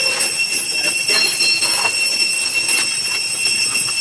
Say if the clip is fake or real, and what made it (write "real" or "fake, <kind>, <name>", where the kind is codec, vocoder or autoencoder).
real